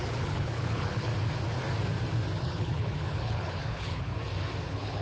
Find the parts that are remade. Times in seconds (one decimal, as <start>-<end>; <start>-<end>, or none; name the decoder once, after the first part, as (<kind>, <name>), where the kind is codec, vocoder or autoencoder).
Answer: 0.0-1.1 (codec, HILCodec); 2.4-4.1; 4.6-5.0